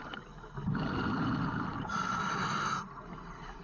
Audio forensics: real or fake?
real